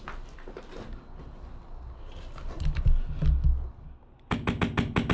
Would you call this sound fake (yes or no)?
no